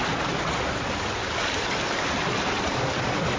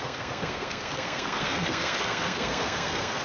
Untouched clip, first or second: first